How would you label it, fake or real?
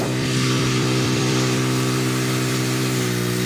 fake